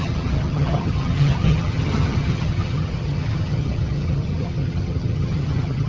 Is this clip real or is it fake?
fake